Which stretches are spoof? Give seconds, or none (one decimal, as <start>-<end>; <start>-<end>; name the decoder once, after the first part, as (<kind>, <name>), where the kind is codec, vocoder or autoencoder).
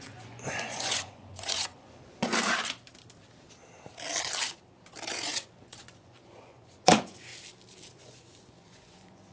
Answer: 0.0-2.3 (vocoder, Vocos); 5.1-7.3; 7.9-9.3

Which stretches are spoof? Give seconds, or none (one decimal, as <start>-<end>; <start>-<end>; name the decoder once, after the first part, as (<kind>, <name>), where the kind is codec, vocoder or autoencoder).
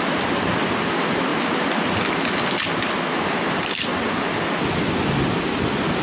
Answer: none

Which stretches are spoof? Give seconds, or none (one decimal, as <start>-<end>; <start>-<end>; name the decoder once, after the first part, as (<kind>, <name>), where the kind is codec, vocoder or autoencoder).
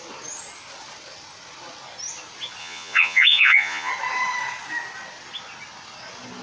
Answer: 2.6-3.9 (vocoder, Vocos)